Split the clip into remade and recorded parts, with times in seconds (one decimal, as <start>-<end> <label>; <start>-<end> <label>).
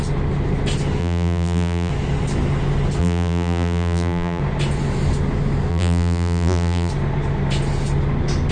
0.0-1.0 recorded; 1.0-1.9 remade; 1.9-3.0 recorded; 3.0-4.4 remade; 4.4-5.7 recorded; 5.7-6.9 remade; 6.9-8.5 recorded